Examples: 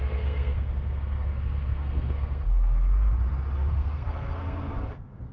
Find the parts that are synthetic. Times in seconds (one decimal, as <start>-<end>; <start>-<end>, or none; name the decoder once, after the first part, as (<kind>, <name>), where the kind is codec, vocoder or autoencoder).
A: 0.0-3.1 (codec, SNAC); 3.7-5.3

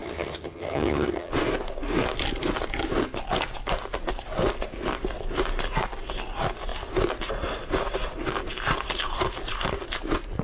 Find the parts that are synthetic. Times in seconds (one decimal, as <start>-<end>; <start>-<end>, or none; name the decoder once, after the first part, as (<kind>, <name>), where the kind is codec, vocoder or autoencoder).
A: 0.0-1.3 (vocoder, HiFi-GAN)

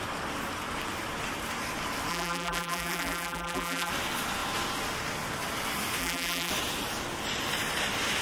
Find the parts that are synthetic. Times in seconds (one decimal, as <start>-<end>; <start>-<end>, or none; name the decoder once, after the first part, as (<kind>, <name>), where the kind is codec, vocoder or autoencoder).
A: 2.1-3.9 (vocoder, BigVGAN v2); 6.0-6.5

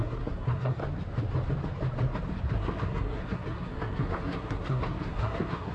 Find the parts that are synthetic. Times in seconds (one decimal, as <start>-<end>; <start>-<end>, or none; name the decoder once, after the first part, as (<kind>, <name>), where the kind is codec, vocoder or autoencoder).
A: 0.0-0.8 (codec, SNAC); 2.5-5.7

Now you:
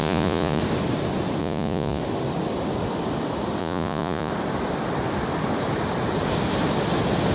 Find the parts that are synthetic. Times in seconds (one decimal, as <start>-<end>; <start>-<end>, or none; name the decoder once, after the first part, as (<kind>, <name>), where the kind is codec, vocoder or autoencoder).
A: 0.0-0.6 (vocoder, Vocos); 1.4-2.0; 3.6-4.3

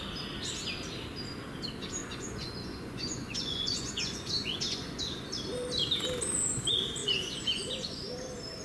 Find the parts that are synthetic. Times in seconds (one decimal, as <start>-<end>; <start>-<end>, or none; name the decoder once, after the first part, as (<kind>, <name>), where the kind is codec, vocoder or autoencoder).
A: 2.0-5.3 (vocoder, Vocos); 7.0-8.1

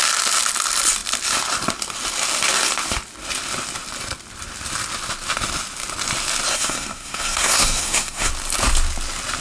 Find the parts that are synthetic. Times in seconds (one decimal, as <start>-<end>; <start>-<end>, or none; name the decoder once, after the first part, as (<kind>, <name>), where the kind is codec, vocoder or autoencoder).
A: 6.5-8.3 (codec, SNAC)

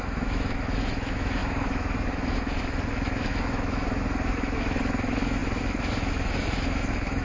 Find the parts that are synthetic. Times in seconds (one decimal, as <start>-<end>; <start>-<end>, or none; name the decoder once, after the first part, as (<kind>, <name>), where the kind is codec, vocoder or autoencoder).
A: 0.0-7.2 (autoencoder, DAC-VAE)